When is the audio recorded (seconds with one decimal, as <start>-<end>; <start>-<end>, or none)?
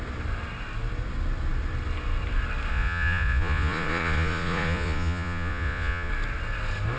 0.0-2.7; 6.1-7.0